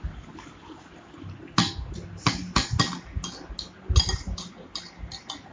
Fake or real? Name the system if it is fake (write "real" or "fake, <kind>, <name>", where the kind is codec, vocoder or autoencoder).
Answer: real